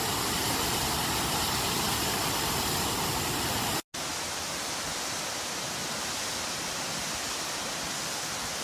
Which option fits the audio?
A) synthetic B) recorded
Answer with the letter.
B